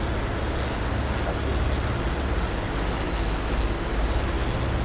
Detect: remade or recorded recorded